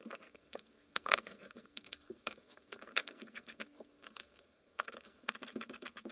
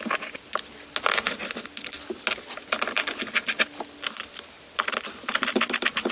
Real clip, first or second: second